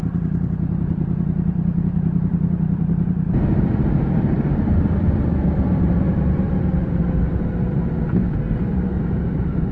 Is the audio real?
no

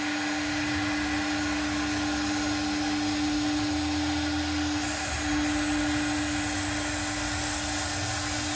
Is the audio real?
yes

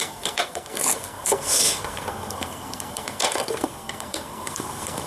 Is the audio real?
no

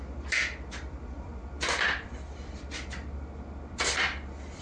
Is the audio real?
no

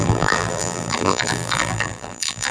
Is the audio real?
no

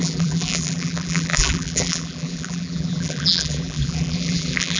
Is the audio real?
no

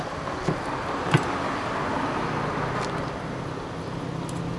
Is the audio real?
yes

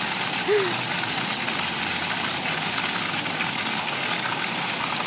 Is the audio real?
yes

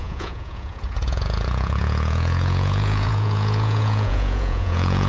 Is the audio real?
no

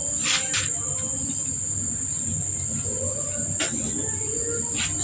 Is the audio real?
yes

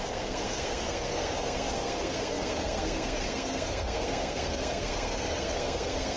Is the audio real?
no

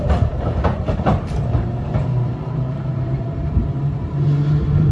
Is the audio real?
no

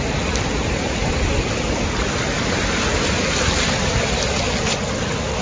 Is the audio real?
yes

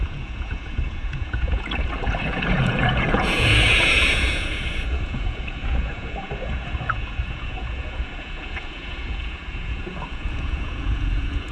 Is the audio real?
no